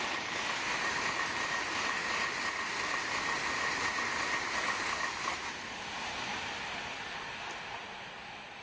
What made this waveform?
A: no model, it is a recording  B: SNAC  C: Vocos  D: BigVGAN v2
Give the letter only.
A